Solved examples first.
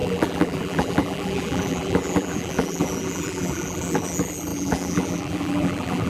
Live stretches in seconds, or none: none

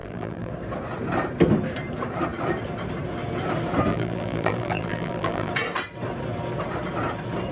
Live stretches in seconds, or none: 0.5-3.9; 5.5-7.5

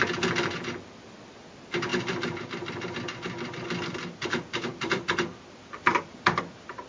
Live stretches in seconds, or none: 0.0-1.9; 2.9-4.7; 6.4-6.9

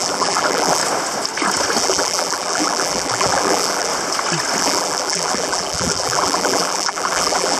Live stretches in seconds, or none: 0.8-1.8; 3.9-4.6

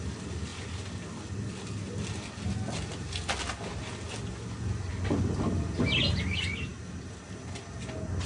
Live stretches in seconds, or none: 0.0-0.5; 1.0-4.9; 6.2-6.7; 7.6-8.3

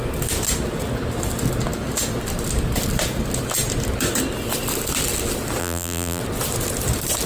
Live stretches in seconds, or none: 0.0-5.6; 6.2-7.3

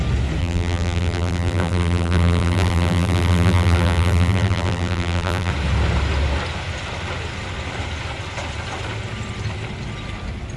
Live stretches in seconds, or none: 0.0-0.4; 5.5-10.6

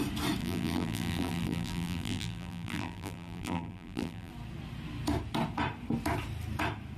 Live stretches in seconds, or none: 0.0-0.4; 4.3-7.0